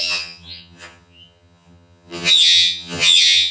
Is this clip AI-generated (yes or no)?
yes